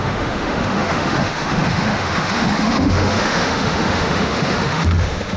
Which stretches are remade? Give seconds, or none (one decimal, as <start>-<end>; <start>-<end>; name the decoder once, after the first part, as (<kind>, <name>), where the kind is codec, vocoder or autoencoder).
0.0-5.4 (autoencoder, DAC-VAE)